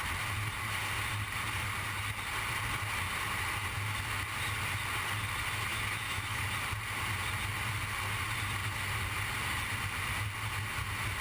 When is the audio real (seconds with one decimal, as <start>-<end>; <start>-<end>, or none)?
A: 0.0-5.7; 6.4-11.2